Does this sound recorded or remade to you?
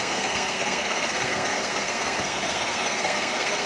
remade